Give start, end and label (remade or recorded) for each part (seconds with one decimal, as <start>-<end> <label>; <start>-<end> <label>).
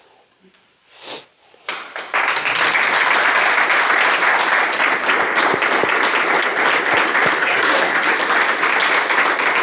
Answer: 0.0-7.4 recorded; 7.4-8.1 remade; 8.1-9.6 recorded